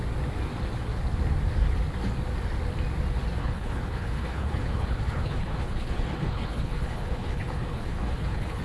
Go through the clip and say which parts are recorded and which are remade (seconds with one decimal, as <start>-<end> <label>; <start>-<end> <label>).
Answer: 0.0-3.4 recorded; 3.4-8.6 remade